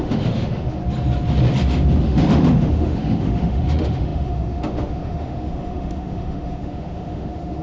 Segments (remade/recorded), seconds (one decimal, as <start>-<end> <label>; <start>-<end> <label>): 0.0-0.8 remade; 0.8-2.0 recorded; 2.0-7.6 remade